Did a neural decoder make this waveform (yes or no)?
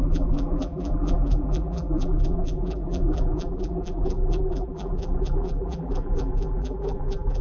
yes